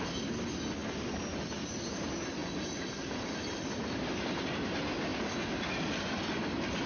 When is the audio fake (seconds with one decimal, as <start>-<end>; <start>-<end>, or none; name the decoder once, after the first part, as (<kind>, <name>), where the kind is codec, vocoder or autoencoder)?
2.4-3.3 (vocoder, BigVGAN v2)